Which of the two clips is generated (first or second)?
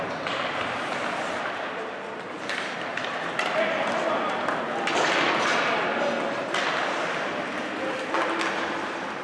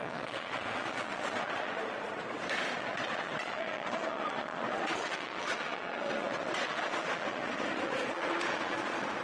second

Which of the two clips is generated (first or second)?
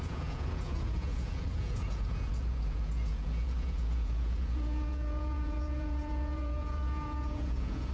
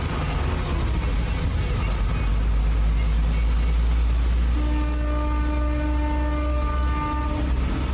first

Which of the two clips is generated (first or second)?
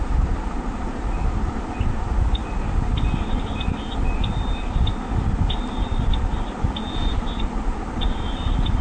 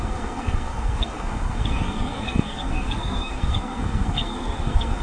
second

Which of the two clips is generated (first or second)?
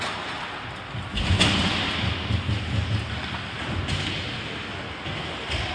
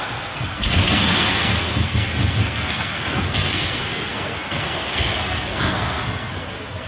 second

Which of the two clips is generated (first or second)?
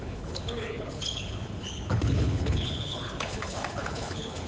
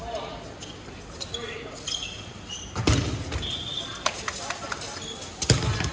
first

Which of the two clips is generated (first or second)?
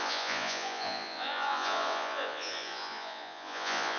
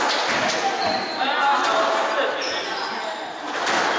first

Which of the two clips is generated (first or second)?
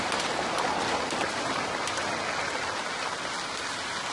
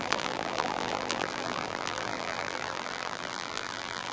second